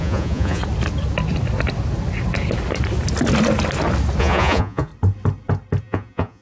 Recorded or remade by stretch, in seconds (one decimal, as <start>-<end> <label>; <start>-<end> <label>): 0.0-0.6 remade; 0.6-4.2 recorded; 4.2-4.9 remade; 4.9-5.8 recorded; 5.8-6.4 remade